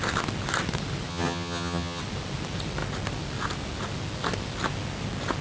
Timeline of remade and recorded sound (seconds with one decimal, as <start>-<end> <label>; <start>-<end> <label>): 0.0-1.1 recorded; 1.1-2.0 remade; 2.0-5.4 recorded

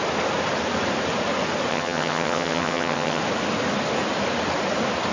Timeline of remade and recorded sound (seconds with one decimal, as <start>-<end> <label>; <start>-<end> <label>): 0.0-1.7 recorded; 1.7-3.2 remade; 3.2-5.1 recorded

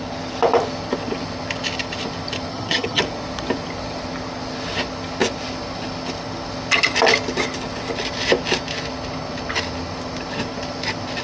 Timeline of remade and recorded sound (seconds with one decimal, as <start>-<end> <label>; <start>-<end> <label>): 0.0-2.5 recorded; 2.5-3.0 remade; 3.0-11.2 recorded

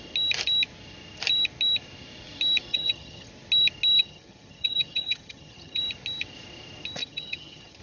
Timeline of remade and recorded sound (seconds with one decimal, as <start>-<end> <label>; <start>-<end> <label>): 0.0-2.7 recorded; 2.7-3.3 remade; 3.3-4.0 recorded; 4.0-5.8 remade; 5.8-7.0 recorded; 7.0-7.8 remade

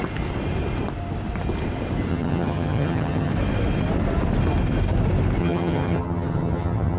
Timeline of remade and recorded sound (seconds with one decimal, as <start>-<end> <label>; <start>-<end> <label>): 0.0-2.1 recorded; 2.1-3.3 remade; 3.3-5.4 recorded; 5.4-7.0 remade